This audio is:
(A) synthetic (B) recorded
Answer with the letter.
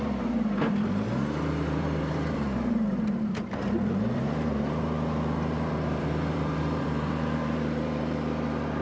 A